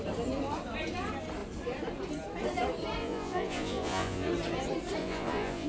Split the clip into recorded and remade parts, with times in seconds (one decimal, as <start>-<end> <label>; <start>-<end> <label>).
0.0-3.0 recorded; 3.0-4.3 remade; 4.3-5.0 recorded; 5.0-5.7 remade